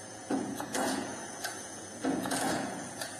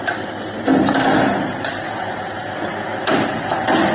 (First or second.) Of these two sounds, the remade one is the first